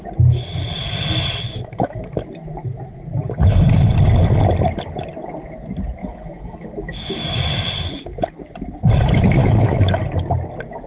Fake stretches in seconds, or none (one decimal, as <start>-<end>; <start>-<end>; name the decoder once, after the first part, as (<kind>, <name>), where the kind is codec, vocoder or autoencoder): 1.5-2.0 (autoencoder, DAC-VAE); 6.0-7.4; 9.4-10.0